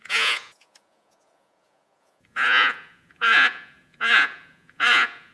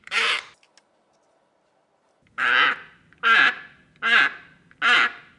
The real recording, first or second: second